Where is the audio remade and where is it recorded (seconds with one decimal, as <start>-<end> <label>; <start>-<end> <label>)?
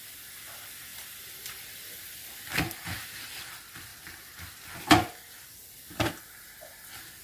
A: 0.0-0.9 recorded; 0.9-3.4 remade; 3.4-3.9 recorded; 3.9-4.6 remade; 4.6-7.2 recorded